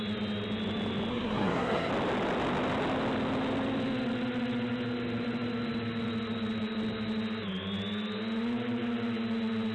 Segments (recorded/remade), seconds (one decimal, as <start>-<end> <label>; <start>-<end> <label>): 0.0-1.1 recorded; 1.1-1.9 remade; 1.9-9.7 recorded